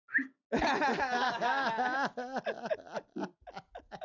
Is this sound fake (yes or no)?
no